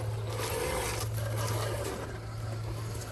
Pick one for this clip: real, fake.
real